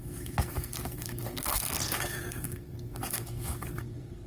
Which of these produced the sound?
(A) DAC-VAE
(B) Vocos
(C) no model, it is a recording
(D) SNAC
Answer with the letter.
D